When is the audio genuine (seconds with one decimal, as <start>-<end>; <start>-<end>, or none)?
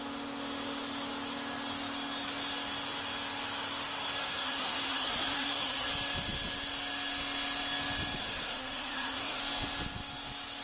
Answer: 0.0-4.2; 5.9-8.2; 9.4-10.6